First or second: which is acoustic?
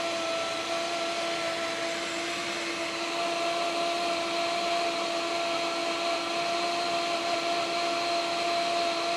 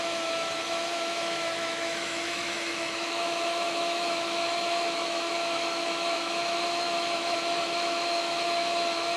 first